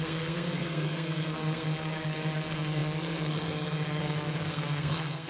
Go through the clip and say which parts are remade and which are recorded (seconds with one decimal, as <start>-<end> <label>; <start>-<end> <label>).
0.0-5.3 remade